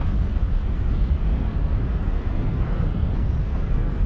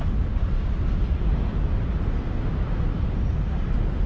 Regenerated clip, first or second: first